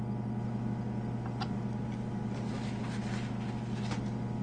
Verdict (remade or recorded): recorded